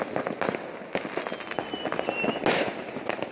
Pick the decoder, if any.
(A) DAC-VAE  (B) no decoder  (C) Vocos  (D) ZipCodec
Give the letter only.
B